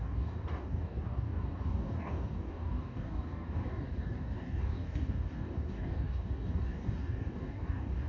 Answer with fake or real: fake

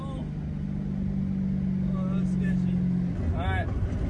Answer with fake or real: real